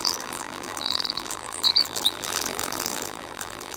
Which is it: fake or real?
fake